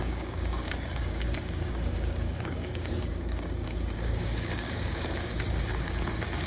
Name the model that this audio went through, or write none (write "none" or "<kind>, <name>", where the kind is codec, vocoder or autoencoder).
codec, DAC